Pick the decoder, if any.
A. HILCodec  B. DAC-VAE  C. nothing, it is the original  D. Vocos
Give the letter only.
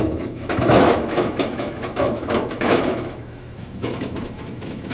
B